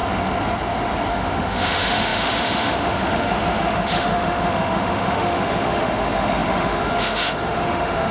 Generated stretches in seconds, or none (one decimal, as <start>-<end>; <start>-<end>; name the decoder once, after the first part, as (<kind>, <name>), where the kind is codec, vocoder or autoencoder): 1.1-8.1 (autoencoder, DAC-VAE)

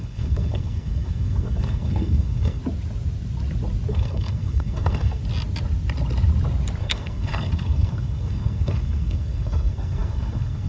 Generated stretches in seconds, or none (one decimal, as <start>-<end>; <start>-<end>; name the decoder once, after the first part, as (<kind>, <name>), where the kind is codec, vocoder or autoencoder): 0.0-2.6 (codec, SNAC); 3.9-5.2; 6.8-10.7

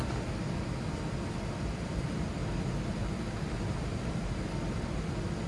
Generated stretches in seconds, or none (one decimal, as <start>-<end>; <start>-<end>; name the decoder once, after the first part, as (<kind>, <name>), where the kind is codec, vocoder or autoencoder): none

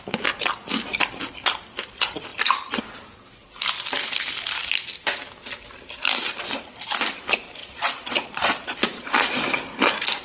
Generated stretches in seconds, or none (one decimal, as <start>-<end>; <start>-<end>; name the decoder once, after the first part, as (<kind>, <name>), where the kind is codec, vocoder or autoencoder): 7.6-9.1 (vocoder, Vocos)

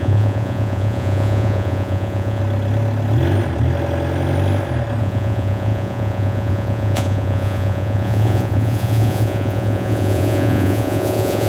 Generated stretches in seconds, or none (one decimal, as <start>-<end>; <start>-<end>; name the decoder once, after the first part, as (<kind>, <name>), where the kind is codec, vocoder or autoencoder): 0.0-2.4 (vocoder, Vocos); 5.0-11.5

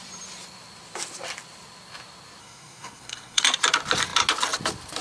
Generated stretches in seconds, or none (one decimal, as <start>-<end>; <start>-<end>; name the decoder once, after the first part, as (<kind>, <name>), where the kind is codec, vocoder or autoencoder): 2.4-3.4 (codec, SNAC)

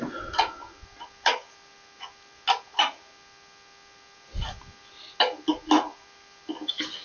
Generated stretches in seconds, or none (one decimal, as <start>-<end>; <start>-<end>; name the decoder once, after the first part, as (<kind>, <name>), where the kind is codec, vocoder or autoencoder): none

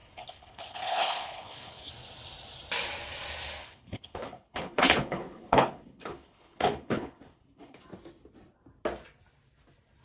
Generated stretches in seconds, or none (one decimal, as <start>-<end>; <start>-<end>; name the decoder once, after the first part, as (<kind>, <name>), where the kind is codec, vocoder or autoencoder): 0.0-1.9 (codec, HILCodec); 3.6-7.8